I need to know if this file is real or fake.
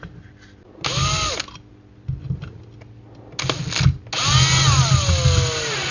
real